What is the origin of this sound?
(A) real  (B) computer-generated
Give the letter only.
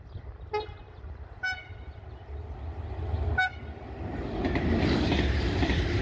A